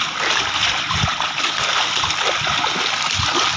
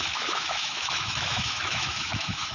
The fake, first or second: second